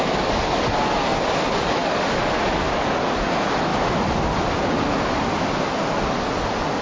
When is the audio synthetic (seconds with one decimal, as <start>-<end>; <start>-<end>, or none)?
none